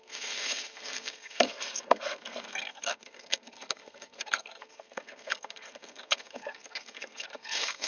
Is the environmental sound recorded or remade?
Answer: remade